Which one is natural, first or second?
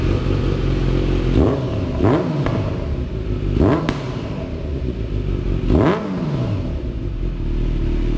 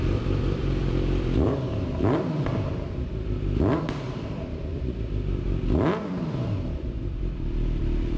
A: first